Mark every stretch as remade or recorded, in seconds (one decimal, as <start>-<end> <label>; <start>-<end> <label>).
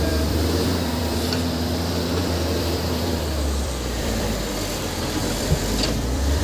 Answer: 0.0-6.4 remade